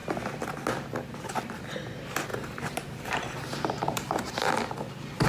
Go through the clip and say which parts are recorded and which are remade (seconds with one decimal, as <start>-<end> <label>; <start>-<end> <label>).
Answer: 0.0-2.3 recorded; 2.3-4.5 remade; 4.5-5.3 recorded